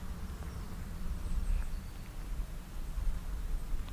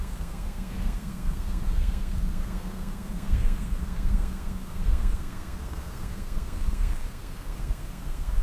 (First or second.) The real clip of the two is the first